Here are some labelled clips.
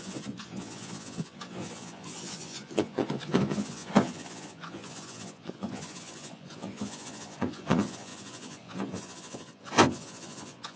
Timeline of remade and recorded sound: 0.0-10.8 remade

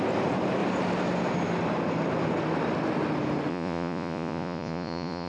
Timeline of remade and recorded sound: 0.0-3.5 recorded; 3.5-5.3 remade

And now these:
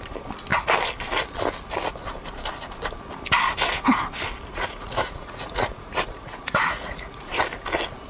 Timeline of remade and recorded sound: 0.0-4.5 recorded; 4.5-7.3 remade; 7.3-8.1 recorded

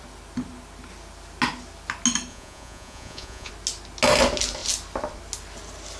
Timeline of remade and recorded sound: 0.0-2.3 recorded; 2.3-3.5 remade; 3.5-6.0 recorded

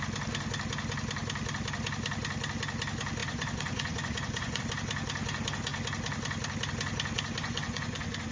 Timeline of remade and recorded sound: 0.0-3.2 recorded; 3.2-4.6 remade; 4.6-7.4 recorded; 7.4-8.3 remade

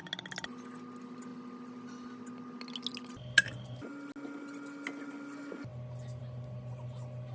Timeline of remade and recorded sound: 0.0-7.3 recorded

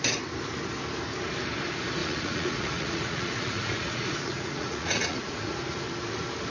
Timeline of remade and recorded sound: 0.0-2.0 recorded; 2.0-5.8 remade; 5.8-6.5 recorded

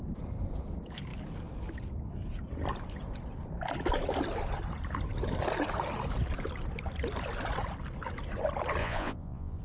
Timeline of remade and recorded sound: 0.0-8.8 recorded; 8.8-9.6 remade